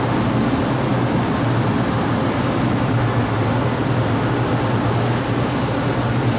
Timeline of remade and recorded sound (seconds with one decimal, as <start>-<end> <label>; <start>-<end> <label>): 0.0-6.4 recorded